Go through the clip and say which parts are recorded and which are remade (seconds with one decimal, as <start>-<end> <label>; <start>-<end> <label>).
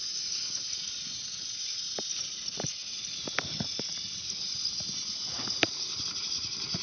0.0-6.8 recorded